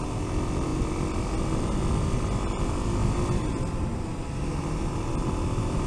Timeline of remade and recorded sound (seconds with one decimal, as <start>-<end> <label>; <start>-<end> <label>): 0.0-5.9 recorded